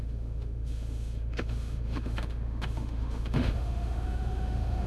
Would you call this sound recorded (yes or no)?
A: no